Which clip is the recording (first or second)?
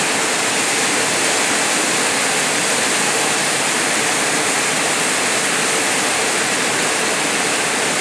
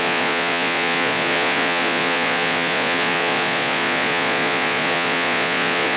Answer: first